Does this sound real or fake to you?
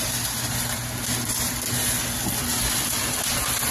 real